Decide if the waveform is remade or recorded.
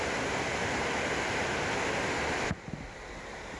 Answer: recorded